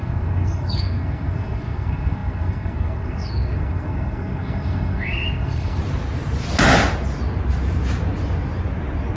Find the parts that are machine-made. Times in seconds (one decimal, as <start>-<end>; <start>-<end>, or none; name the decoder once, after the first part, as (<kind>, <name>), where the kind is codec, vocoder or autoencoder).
0.0-5.8 (codec, SNAC)